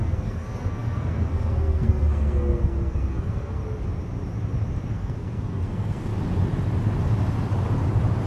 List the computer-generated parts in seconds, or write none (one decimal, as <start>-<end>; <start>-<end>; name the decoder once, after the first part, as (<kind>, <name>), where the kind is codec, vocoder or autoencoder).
0.0-3.6 (codec, SNAC); 4.9-6.1